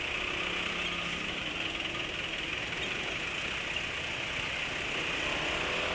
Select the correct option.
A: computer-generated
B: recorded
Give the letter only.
B